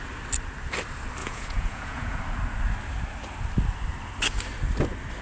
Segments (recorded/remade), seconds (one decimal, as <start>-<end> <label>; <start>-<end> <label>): 0.0-1.2 recorded; 1.2-2.2 remade; 2.2-5.2 recorded